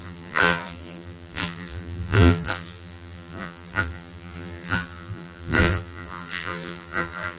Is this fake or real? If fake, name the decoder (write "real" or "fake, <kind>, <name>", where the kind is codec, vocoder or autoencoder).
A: fake, vocoder, BigVGAN v2